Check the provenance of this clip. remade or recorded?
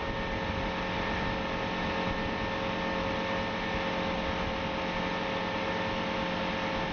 recorded